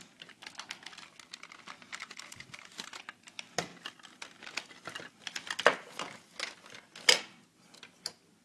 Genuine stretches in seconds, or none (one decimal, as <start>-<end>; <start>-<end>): 0.0-2.0; 3.0-8.4